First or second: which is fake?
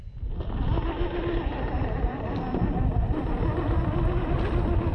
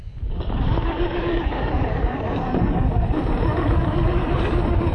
second